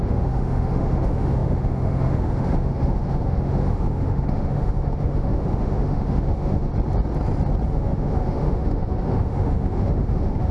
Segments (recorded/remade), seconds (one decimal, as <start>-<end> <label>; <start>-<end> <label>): 0.0-6.7 remade; 6.7-7.7 recorded; 7.7-10.5 remade